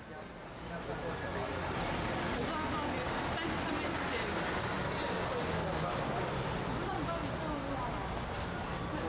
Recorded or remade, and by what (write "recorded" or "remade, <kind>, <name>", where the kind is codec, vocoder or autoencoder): recorded